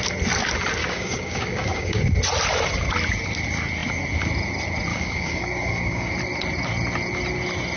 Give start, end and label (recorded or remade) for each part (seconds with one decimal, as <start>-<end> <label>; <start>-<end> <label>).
0.0-0.8 recorded; 0.8-2.0 remade; 2.0-4.9 recorded; 4.9-6.1 remade; 6.1-7.8 recorded